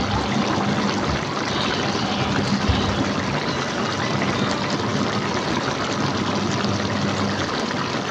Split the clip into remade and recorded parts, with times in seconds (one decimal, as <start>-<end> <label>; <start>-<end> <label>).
0.0-8.1 recorded